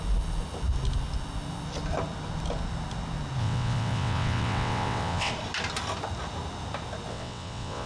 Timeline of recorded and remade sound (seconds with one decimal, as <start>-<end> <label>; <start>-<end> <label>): 0.0-3.4 recorded; 3.4-5.3 remade; 5.3-7.1 recorded; 7.1-7.9 remade